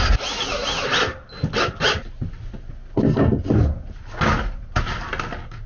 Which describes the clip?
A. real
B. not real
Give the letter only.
A